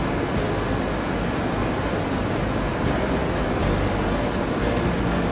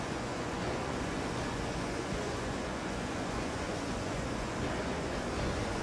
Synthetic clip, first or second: second